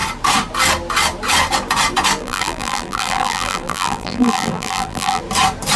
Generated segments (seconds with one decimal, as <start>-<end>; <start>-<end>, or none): 2.2-5.2